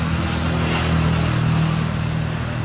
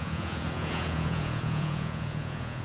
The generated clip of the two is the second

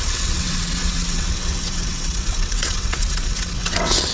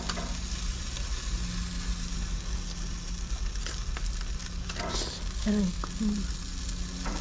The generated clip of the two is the first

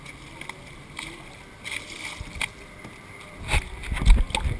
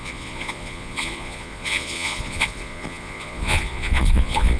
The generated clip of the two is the second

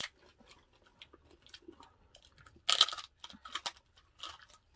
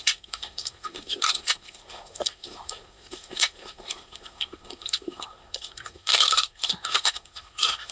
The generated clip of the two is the second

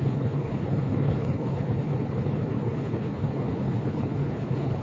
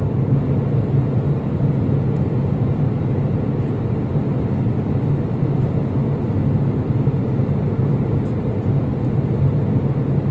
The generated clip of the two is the first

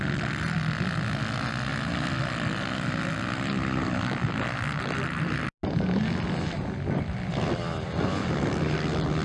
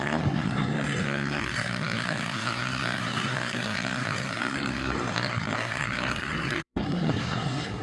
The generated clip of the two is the second